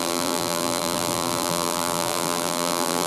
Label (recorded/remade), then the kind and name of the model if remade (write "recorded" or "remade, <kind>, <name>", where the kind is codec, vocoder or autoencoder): remade, vocoder, BigVGAN v2